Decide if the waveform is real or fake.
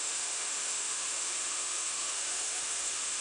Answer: fake